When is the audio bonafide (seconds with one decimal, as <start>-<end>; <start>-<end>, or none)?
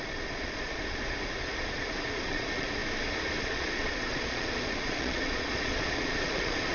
2.8-3.4